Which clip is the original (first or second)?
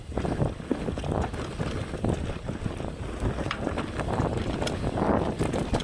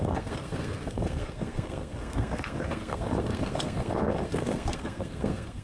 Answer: first